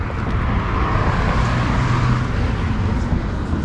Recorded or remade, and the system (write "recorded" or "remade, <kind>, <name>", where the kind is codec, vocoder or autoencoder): recorded